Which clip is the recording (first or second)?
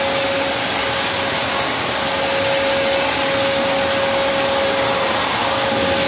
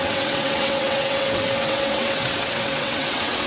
first